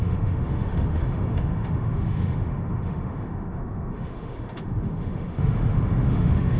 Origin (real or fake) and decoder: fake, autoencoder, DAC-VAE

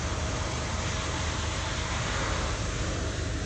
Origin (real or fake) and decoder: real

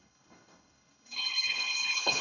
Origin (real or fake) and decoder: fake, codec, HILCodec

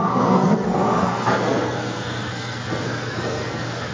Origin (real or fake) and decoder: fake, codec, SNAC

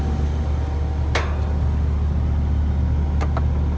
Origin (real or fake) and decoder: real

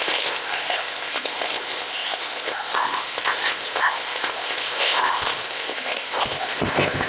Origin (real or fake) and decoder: fake, codec, ZipCodec